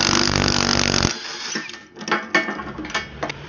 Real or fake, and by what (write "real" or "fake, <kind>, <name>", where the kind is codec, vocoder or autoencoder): real